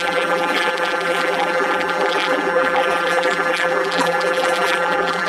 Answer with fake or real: fake